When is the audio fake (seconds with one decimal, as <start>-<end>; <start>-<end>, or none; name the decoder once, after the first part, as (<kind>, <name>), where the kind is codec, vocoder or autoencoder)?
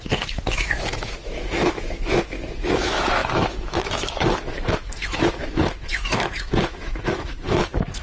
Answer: 0.0-8.0 (autoencoder, DAC-VAE)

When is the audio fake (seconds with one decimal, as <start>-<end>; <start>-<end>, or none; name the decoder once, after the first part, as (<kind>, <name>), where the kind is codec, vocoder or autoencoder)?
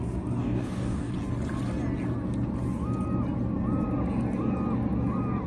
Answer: 0.4-1.1 (codec, DAC)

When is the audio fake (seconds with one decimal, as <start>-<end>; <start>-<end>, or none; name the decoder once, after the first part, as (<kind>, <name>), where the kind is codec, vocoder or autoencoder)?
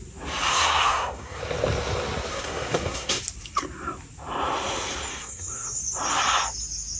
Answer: 0.5-1.4 (codec, SNAC); 2.3-3.2; 5.1-5.8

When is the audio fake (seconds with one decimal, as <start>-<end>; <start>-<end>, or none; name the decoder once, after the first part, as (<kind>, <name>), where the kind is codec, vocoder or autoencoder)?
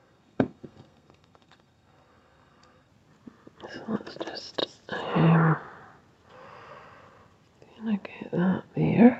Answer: 0.0-2.9 (codec, SNAC)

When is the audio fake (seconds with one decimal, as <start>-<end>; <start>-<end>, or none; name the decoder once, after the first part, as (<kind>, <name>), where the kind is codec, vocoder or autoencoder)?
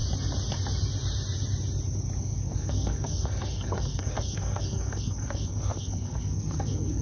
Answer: 2.2-7.0 (codec, SNAC)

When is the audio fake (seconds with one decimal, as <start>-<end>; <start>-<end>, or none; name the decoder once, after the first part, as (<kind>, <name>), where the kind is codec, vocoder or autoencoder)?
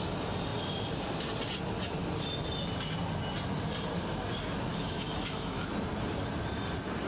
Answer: 4.7-5.7 (autoencoder, DAC-VAE)